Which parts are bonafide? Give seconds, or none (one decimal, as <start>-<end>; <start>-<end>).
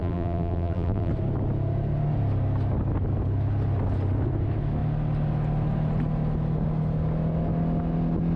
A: 1.1-8.4